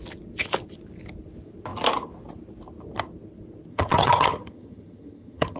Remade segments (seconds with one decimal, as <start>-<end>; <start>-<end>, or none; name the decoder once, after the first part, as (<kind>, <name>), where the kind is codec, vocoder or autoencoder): 3.7-5.6 (vocoder, HiFi-GAN)